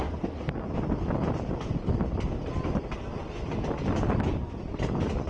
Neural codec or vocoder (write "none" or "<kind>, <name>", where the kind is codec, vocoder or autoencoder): none